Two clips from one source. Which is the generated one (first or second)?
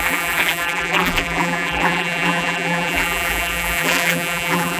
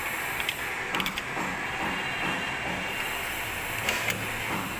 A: first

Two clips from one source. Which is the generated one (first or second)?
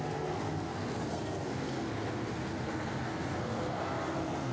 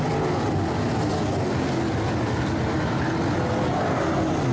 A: first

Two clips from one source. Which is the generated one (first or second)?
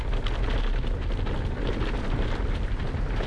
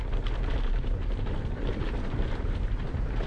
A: second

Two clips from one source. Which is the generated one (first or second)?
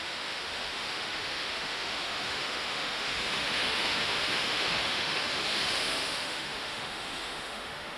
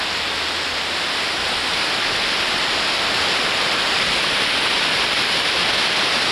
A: first